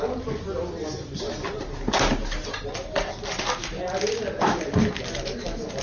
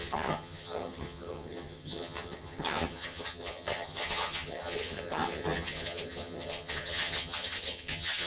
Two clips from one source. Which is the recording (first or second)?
first